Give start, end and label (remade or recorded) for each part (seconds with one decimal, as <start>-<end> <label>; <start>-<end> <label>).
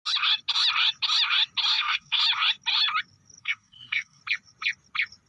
0.0-1.7 recorded; 1.7-2.2 remade; 2.2-3.4 recorded; 3.4-4.2 remade; 4.2-5.3 recorded